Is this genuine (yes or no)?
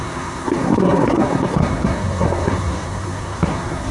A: no